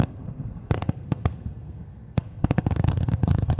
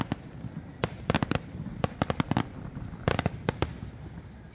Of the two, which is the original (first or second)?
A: second